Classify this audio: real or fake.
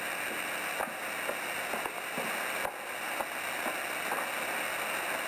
real